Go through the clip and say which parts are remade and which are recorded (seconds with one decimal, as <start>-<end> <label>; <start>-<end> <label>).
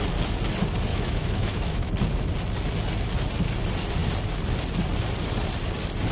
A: 0.0-0.9 recorded; 0.9-1.9 remade; 1.9-6.1 recorded